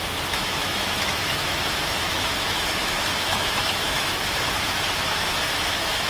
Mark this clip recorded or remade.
remade